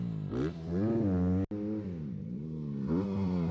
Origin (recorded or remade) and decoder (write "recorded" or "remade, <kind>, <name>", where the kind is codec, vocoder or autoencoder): recorded